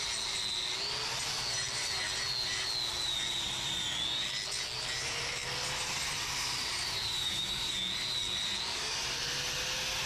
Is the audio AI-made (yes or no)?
no